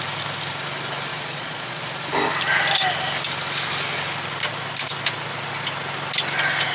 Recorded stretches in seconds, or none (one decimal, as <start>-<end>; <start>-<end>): 0.0-1.1; 1.8-6.7